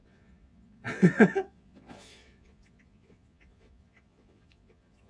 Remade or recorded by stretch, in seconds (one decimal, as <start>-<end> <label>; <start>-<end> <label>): 0.0-5.1 remade